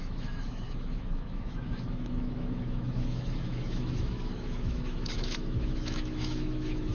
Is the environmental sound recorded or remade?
remade